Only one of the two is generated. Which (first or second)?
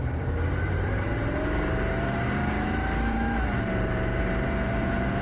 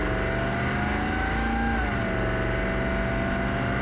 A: first